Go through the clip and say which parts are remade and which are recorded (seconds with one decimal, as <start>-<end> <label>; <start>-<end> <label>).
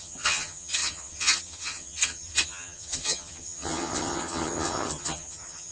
0.0-5.7 remade